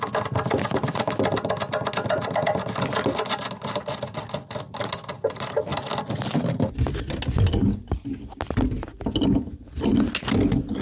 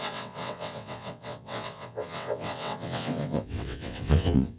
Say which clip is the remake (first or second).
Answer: second